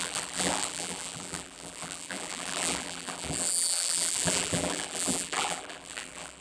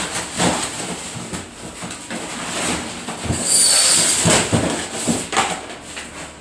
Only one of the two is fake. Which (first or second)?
first